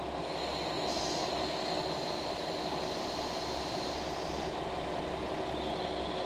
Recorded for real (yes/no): yes